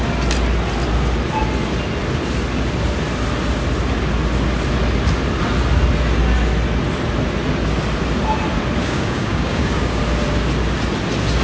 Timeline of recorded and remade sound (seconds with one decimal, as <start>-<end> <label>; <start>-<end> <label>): 0.0-8.8 recorded; 8.8-10.0 remade; 10.0-11.4 recorded